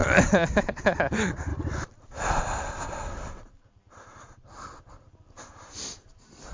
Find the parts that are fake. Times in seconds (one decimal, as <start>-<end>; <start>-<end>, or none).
0.0-0.6